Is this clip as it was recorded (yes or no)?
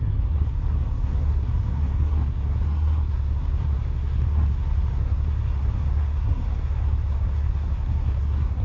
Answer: no